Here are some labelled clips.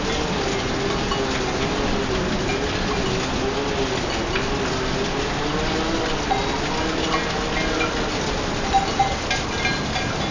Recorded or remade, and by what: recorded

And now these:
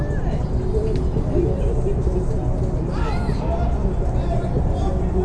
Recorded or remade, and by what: recorded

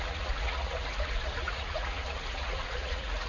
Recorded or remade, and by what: remade, vocoder, Vocos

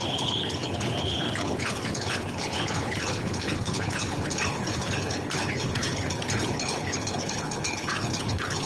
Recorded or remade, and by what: remade, codec, HILCodec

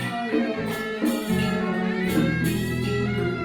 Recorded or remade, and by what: recorded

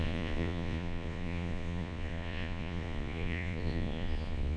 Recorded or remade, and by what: remade, vocoder, Vocos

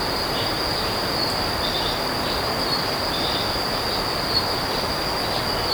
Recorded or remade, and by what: recorded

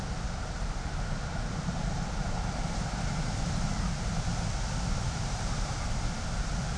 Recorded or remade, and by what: recorded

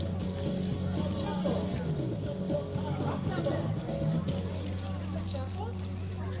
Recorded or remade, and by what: recorded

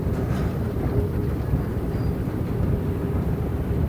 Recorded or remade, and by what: remade, vocoder, BigVGAN v2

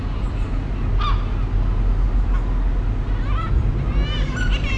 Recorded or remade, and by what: recorded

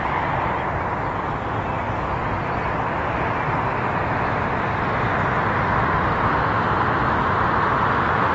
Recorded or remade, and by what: remade, vocoder, BigVGAN v2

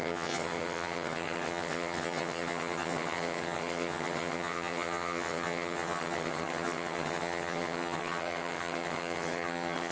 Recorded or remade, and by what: remade, vocoder, HiFi-GAN